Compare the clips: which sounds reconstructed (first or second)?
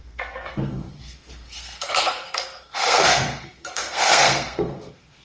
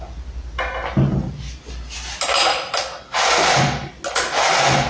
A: first